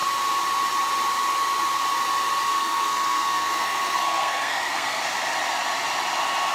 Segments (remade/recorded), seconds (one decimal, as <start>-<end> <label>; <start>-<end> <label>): 0.0-2.5 recorded; 2.5-5.0 remade; 5.0-6.5 recorded